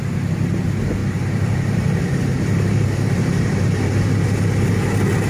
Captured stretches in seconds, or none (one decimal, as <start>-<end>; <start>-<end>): 0.0-1.0; 3.9-5.3